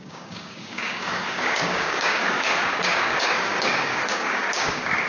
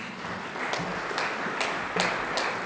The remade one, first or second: first